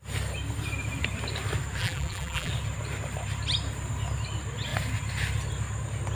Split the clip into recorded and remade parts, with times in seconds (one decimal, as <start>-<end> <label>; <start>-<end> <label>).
0.0-1.8 recorded; 1.8-2.5 remade; 2.5-6.1 recorded